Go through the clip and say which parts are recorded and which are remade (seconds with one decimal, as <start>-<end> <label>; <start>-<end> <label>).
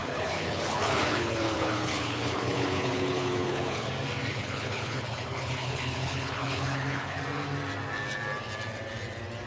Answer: 0.0-3.9 remade; 3.9-4.3 recorded; 4.3-7.2 remade; 7.2-9.5 recorded